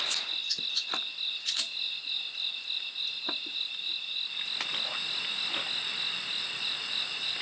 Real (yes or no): yes